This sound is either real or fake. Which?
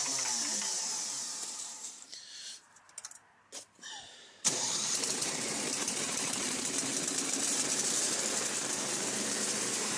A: fake